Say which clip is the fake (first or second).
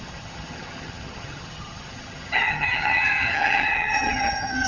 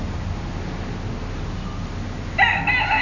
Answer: first